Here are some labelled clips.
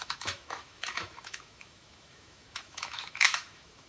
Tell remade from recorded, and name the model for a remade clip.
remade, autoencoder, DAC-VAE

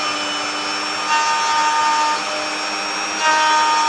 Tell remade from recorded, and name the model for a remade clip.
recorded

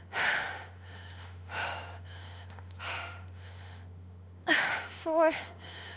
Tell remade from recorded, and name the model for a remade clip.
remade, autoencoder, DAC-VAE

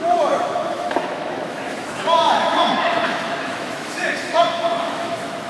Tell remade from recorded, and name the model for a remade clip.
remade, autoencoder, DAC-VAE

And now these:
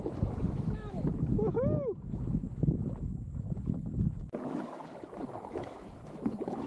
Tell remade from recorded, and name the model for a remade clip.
remade, autoencoder, DAC-VAE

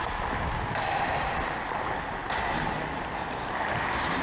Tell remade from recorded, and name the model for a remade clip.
recorded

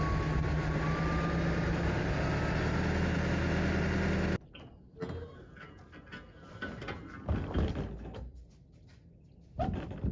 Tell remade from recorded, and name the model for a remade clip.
recorded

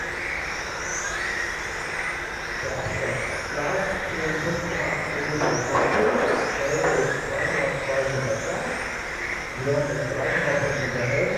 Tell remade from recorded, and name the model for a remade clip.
recorded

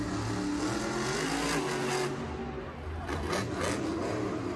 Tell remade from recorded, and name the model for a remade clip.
recorded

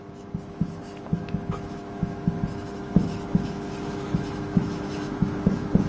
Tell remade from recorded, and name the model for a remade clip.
remade, autoencoder, DAC-VAE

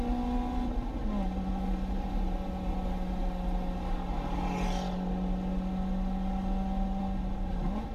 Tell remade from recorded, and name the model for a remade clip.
recorded